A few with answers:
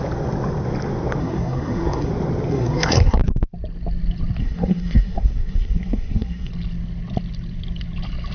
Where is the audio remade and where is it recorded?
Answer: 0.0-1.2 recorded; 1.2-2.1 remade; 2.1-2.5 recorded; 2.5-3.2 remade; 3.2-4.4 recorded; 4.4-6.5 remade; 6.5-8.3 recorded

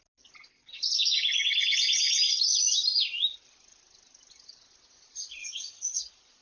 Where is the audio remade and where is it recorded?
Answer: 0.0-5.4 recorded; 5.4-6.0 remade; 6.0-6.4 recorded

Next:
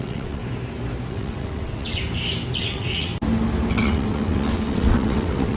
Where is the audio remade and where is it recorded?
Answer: 0.0-0.4 remade; 0.4-1.1 recorded; 1.1-2.0 remade; 2.0-2.6 recorded; 2.6-3.1 remade; 3.1-3.7 recorded; 3.7-5.6 remade

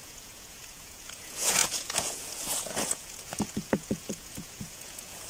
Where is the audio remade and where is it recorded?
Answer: 0.0-5.3 remade

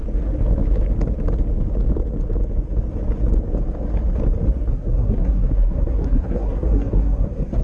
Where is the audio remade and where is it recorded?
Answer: 0.0-4.7 recorded; 4.7-7.6 remade